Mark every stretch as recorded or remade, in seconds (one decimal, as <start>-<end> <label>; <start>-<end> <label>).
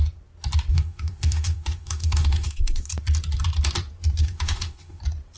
0.0-0.7 recorded; 0.7-2.9 remade; 2.9-4.2 recorded; 4.2-5.0 remade; 5.0-5.4 recorded